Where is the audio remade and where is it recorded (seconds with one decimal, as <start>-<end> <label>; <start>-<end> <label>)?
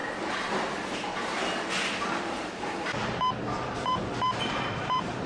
0.0-2.0 recorded; 2.0-3.0 remade; 3.0-3.6 recorded; 3.6-5.3 remade